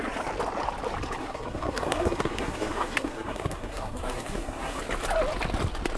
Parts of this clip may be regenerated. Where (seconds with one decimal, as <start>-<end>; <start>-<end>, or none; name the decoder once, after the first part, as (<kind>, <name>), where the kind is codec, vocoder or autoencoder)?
1.2-4.8 (codec, SNAC)